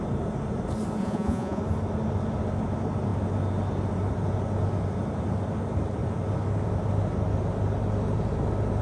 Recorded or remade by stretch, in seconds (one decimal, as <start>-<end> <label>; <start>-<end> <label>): 0.0-1.0 recorded; 1.0-1.6 remade; 1.6-8.8 recorded